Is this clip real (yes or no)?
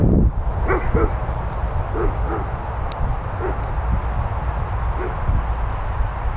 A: yes